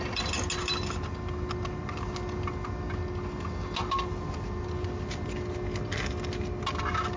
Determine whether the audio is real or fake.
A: real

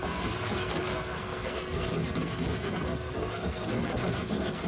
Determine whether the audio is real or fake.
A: fake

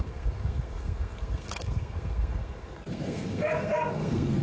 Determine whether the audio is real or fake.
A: fake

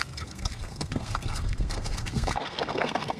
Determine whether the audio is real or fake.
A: fake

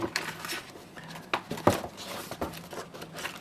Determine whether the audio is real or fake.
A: real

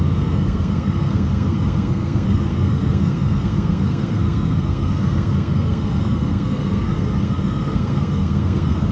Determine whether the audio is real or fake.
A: fake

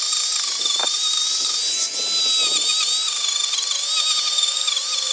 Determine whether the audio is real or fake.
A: real